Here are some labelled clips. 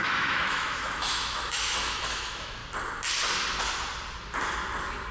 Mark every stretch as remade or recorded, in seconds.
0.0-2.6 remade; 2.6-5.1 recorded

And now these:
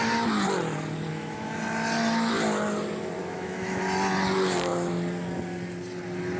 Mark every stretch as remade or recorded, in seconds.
0.0-1.1 recorded; 1.1-1.6 remade; 1.6-3.2 recorded; 3.2-3.8 remade; 3.8-6.4 recorded

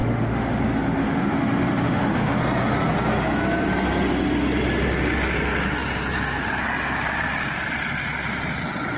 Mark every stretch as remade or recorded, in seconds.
0.0-0.6 remade; 0.6-1.0 recorded; 1.0-2.4 remade; 2.4-9.0 recorded

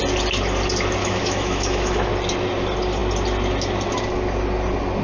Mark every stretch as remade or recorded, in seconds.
0.0-1.0 recorded; 1.0-2.1 remade; 2.1-5.0 recorded